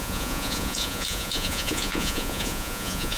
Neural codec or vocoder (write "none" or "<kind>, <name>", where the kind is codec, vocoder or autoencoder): vocoder, Vocos